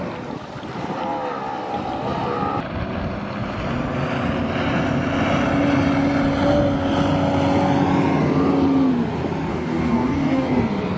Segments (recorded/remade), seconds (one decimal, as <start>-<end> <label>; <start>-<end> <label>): 0.0-9.5 recorded; 9.5-10.5 remade; 10.5-11.0 recorded